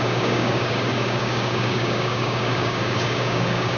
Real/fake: fake